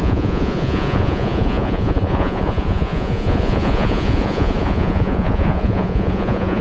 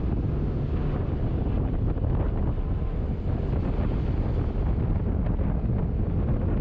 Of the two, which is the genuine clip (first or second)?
second